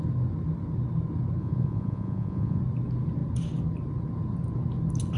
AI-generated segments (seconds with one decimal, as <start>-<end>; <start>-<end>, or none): 1.4-2.6